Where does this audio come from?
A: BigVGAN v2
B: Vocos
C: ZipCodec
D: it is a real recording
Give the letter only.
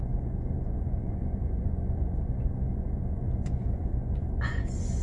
B